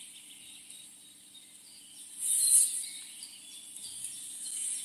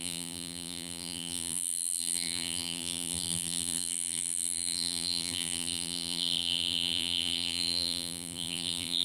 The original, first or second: first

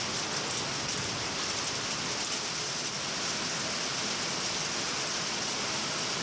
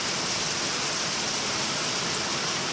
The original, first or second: first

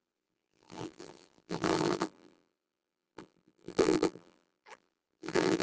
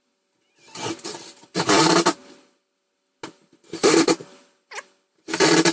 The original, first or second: second